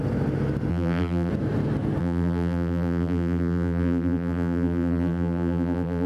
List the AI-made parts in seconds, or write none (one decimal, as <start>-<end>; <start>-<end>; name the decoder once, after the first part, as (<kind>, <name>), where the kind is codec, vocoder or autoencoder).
0.7-1.3 (vocoder, BigVGAN v2); 2.0-6.1